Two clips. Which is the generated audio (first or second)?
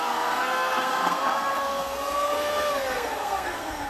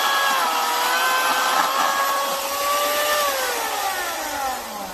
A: first